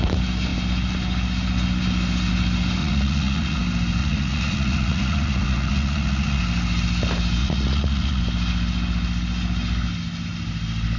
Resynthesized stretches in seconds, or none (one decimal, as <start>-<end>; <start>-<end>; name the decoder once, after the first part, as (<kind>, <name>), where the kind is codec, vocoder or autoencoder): 2.8-3.6 (vocoder, Vocos); 4.0-6.4; 7.4-8.2